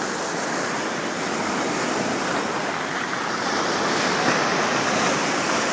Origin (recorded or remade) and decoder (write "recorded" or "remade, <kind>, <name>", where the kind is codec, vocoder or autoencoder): recorded